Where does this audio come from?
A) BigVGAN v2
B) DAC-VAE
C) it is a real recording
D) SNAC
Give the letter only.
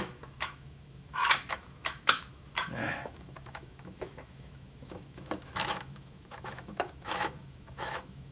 B